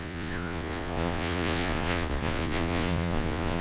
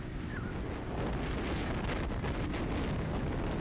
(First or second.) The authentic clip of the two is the second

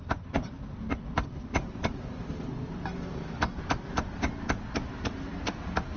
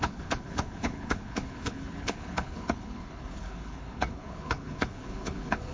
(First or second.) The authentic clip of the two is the first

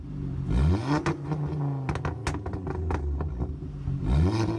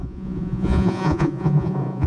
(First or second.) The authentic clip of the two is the first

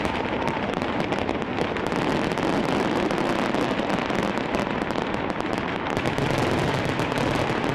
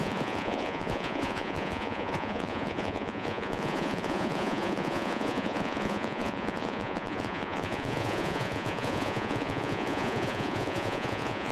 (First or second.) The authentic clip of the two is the first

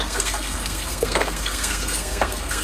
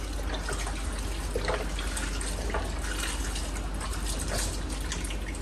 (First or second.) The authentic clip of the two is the second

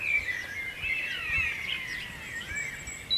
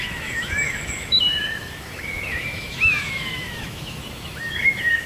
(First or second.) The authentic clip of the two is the first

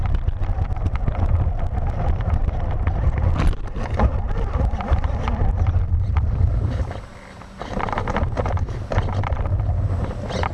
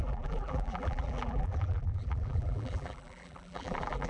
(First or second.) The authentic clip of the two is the first